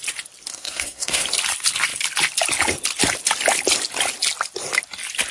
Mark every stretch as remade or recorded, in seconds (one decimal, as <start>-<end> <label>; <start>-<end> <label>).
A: 0.0-0.5 recorded; 0.5-1.2 remade; 1.2-5.3 recorded